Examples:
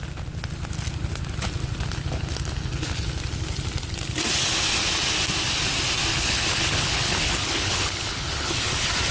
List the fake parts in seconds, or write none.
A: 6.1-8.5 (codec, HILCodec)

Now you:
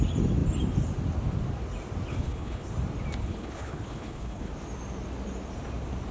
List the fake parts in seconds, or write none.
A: 2.1-2.7 (codec, HILCodec); 3.2-4.5

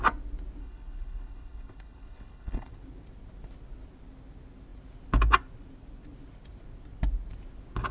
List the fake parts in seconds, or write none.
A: 0.6-2.7 (codec, HILCodec)

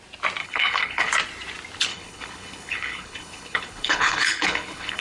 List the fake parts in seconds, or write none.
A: 0.4-1.1 (codec, HILCodec); 1.9-5.0